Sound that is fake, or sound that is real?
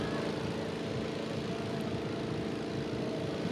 real